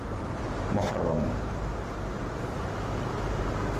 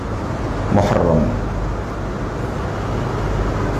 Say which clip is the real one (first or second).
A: second